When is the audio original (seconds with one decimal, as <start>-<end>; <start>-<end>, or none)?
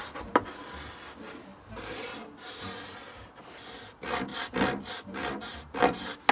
0.5-6.3